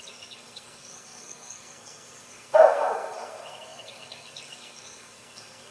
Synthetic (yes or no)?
yes